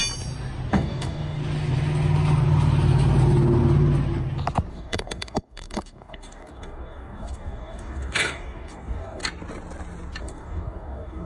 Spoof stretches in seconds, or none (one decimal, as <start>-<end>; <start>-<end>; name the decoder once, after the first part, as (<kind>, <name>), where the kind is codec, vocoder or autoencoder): 0.7-1.4 (codec, DAC); 4.7-9.2; 10.2-11.3